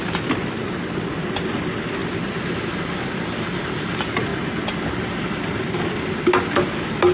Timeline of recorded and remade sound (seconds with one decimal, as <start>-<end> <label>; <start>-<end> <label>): 0.0-4.3 recorded; 4.3-5.6 remade; 5.6-7.1 recorded